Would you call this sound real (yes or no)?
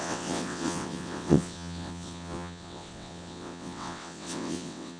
no